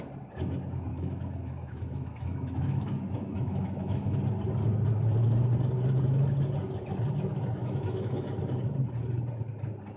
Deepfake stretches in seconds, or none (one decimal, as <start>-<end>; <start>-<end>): 0.9-4.2; 7.6-8.4